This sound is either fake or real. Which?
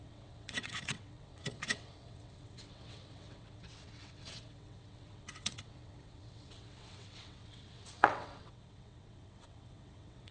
fake